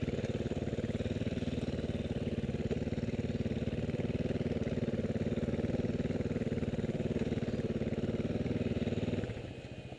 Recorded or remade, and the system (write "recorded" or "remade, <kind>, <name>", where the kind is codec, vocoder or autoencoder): recorded